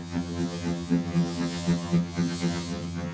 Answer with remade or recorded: remade